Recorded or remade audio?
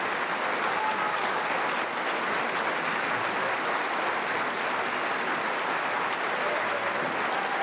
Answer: recorded